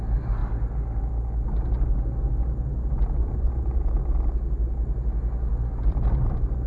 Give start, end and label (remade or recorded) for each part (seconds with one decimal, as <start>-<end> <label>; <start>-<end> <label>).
0.0-3.2 recorded; 3.2-3.8 remade; 3.8-6.7 recorded